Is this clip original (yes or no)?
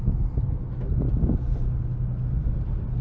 yes